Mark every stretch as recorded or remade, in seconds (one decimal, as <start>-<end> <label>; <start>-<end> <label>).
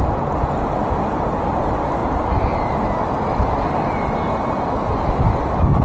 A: 0.0-5.8 recorded